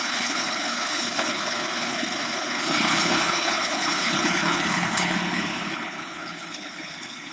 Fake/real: fake